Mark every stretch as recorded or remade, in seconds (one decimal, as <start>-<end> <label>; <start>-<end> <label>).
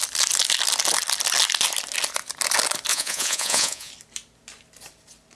0.0-2.9 recorded; 2.9-3.9 remade; 3.9-5.4 recorded